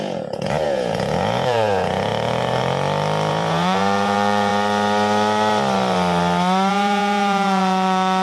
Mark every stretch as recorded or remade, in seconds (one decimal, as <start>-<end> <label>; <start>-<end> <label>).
0.0-2.1 remade; 2.1-3.3 recorded; 3.3-4.5 remade; 4.5-6.7 recorded; 6.7-8.2 remade